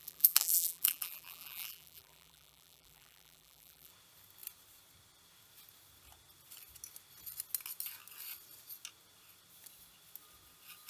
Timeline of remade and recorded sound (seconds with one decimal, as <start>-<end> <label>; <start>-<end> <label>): 0.0-3.9 remade; 3.9-10.9 recorded